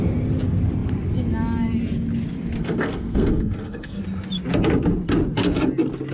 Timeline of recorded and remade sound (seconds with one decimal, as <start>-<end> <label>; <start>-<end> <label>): 0.0-2.6 recorded; 2.6-4.0 remade; 4.0-6.1 recorded

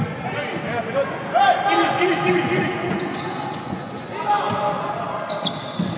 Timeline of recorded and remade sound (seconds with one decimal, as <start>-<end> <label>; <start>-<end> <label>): 0.0-1.8 recorded; 1.8-4.5 remade; 4.5-6.0 recorded